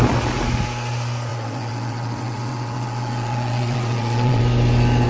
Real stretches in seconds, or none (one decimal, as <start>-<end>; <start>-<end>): 0.0-1.3; 4.4-5.1